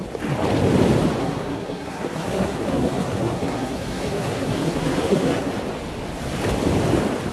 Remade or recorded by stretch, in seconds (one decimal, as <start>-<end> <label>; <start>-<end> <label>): 0.0-1.2 recorded; 1.2-5.5 remade; 5.5-7.3 recorded